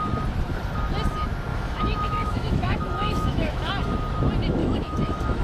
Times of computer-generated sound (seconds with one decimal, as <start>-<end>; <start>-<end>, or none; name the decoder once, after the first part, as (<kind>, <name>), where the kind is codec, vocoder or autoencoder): 1.5-3.7 (autoencoder, DAC-VAE); 4.6-5.4